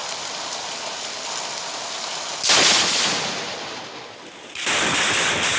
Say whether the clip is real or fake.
real